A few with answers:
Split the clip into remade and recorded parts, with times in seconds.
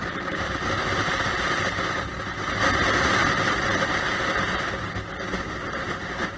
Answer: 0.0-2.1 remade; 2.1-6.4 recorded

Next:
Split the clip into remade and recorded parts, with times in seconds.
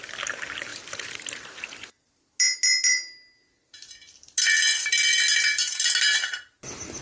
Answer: 0.0-7.0 recorded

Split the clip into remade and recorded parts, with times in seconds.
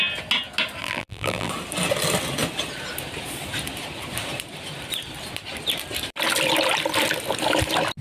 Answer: 0.0-0.8 recorded; 0.8-1.5 remade; 1.5-8.0 recorded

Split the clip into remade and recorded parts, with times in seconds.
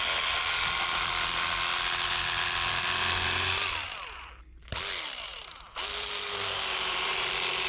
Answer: 0.0-5.3 recorded; 5.3-7.1 remade; 7.1-7.7 recorded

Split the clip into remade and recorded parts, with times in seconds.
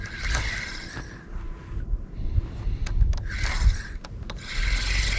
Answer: 0.0-5.2 recorded